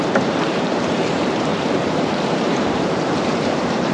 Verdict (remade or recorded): remade